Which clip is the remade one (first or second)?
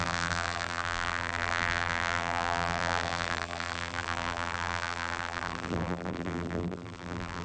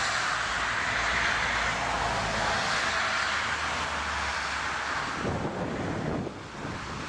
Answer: first